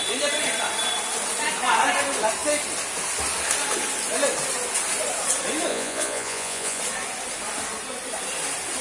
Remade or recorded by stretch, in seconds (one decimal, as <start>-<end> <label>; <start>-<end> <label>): 0.0-5.7 recorded; 5.7-6.8 remade; 6.8-8.8 recorded